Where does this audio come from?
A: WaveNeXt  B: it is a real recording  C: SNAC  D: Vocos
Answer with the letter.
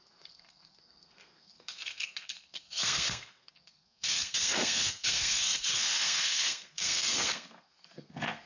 C